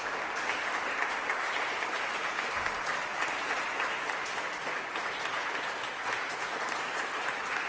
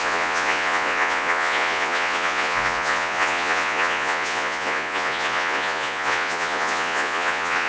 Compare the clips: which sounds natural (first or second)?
first